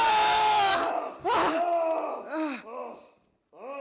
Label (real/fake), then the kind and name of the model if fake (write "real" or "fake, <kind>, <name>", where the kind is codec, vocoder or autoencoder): real